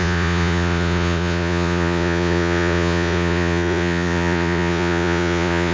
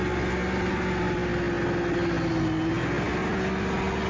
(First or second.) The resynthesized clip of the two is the first